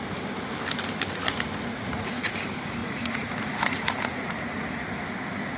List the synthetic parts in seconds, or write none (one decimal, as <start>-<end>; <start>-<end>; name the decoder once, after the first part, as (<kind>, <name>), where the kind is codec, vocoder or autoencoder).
1.7-2.3 (vocoder, Vocos); 2.8-4.7